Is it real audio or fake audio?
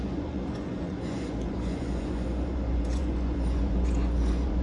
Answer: fake